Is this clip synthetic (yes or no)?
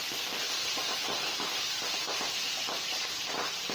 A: yes